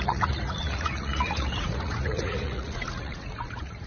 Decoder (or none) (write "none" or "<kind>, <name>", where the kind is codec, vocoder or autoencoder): vocoder, Vocos